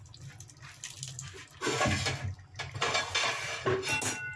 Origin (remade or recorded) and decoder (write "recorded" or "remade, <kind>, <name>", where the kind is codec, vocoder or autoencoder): recorded